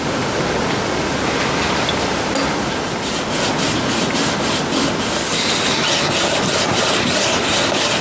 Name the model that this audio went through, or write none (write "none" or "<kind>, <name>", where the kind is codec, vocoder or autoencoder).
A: none